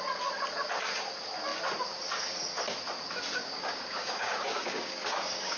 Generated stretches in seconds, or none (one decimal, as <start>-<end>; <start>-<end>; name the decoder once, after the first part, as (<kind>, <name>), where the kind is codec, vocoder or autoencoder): 3.4-5.6 (codec, DAC)